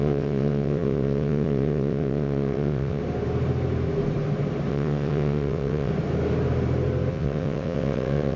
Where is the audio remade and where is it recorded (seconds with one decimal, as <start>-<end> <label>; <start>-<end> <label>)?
0.0-3.0 remade; 3.0-4.7 recorded; 4.7-5.9 remade; 5.9-7.1 recorded; 7.1-8.4 remade